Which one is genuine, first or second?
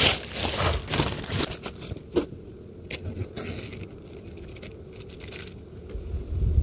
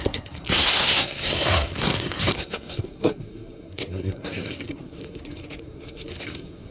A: first